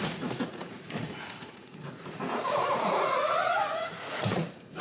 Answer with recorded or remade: remade